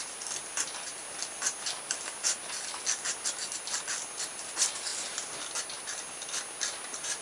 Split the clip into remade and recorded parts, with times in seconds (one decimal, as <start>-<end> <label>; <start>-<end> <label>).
0.0-7.2 recorded